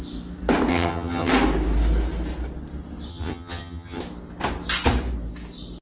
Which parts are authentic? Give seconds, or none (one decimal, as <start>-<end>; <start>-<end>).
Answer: 0.0-0.7; 1.3-3.1; 4.0-5.8